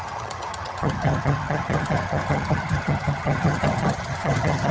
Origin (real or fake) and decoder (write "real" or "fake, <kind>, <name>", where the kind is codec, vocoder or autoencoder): fake, vocoder, HiFi-GAN